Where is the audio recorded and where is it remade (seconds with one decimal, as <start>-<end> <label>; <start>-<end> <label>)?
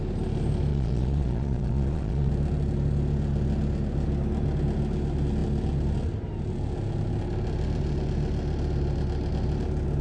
0.0-0.7 recorded; 0.7-2.3 remade; 2.3-10.0 recorded